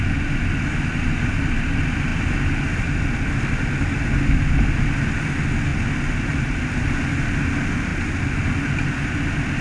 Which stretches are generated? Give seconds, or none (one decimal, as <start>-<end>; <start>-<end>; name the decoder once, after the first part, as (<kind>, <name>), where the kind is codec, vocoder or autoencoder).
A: none